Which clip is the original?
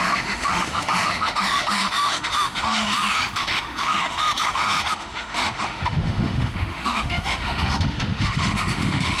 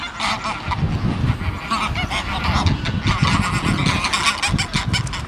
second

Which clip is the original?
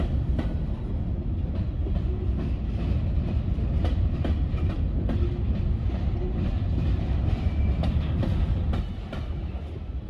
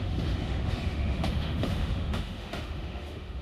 first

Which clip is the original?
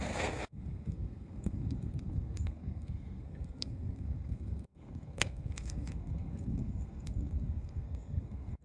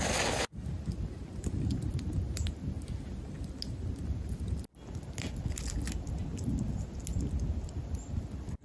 second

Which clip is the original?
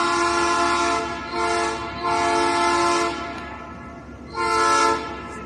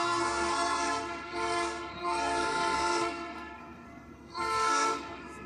first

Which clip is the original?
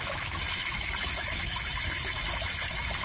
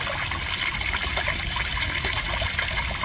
second